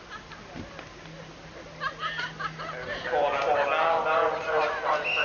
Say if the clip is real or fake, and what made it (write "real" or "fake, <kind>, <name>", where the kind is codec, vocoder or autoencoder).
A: real